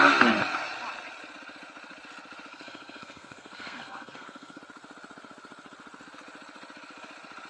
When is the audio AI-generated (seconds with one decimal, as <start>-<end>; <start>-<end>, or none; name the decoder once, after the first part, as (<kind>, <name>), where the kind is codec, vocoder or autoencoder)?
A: 2.5-4.6 (codec, SNAC)